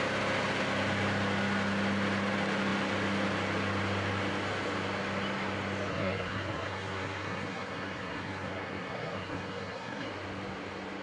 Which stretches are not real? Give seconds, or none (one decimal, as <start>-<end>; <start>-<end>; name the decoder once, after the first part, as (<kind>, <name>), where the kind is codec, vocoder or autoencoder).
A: 5.9-10.1 (codec, SNAC)